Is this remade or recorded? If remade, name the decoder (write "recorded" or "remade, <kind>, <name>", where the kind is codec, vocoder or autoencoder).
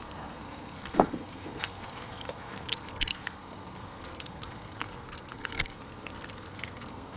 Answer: remade, codec, SNAC